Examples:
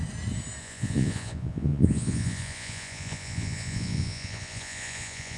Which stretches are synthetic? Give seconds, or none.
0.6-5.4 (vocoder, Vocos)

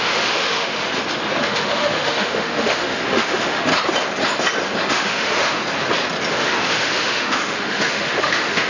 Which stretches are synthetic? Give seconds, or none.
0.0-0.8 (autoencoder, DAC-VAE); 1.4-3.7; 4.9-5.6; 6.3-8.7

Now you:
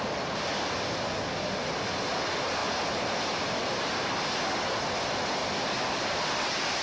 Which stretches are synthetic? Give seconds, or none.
5.4-6.8 (vocoder, BigVGAN v2)

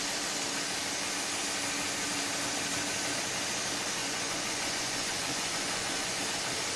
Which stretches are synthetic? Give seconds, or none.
4.0-6.2 (vocoder, Vocos)

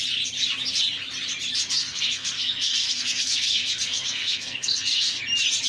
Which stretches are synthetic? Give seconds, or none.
1.8-5.2 (codec, SNAC)